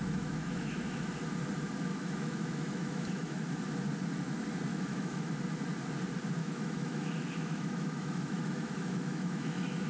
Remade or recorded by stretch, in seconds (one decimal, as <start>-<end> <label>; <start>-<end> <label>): 0.0-1.0 remade; 1.0-1.9 recorded; 1.9-3.6 remade; 3.6-4.7 recorded; 4.7-5.3 remade; 5.3-6.4 recorded; 6.4-9.9 remade